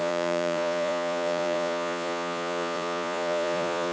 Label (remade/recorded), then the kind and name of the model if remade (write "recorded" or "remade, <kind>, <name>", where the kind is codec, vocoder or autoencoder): remade, vocoder, Vocos